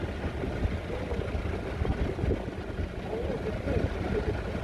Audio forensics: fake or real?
real